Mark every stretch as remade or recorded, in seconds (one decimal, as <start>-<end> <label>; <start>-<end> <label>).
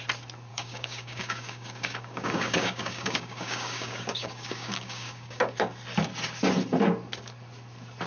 0.0-0.5 recorded; 0.5-5.4 remade; 5.4-8.1 recorded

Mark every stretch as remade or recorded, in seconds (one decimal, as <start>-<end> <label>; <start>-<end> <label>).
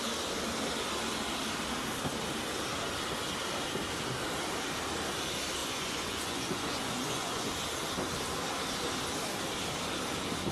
0.0-5.6 recorded; 5.6-7.5 remade; 7.5-10.5 recorded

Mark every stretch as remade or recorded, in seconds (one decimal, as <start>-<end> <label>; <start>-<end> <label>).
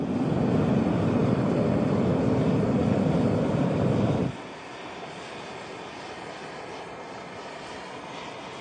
0.0-1.2 recorded; 1.2-4.2 remade; 4.2-8.6 recorded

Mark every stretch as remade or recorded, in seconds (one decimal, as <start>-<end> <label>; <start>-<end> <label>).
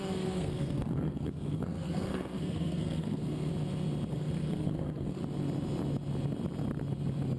0.0-3.5 remade; 3.5-4.1 recorded; 4.1-5.2 remade; 5.2-7.4 recorded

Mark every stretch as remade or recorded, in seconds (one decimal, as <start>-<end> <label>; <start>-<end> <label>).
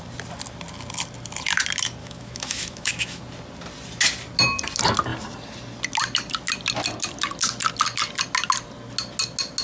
0.0-2.0 recorded; 2.0-3.2 remade; 3.2-9.6 recorded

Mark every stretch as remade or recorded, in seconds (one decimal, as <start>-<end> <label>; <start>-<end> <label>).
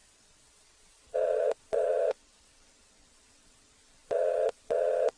0.0-5.2 remade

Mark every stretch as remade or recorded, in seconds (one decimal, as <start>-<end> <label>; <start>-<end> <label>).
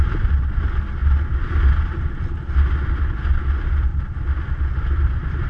0.0-3.9 recorded; 3.9-5.5 remade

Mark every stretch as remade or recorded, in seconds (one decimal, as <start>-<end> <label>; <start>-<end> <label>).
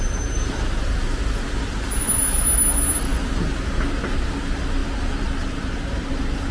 0.0-6.5 recorded